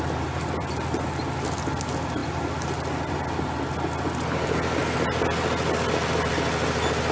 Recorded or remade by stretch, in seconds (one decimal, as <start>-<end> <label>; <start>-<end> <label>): 0.0-7.1 recorded